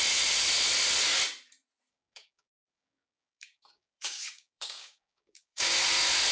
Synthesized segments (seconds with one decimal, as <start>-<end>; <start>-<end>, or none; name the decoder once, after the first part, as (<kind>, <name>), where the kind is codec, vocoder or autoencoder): 1.9-5.7 (codec, DAC)